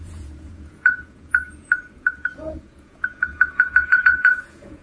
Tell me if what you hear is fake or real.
fake